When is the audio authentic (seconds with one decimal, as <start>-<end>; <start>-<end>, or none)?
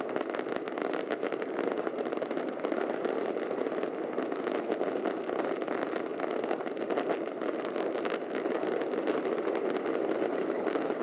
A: 0.0-11.0